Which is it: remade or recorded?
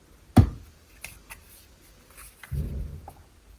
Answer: recorded